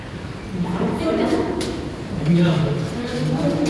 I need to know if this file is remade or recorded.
remade